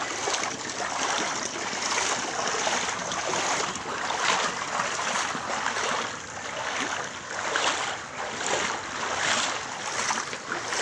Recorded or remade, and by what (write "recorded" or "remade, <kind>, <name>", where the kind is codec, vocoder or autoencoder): recorded